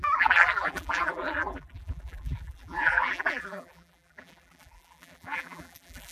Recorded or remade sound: remade